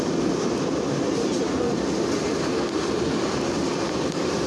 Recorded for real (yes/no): yes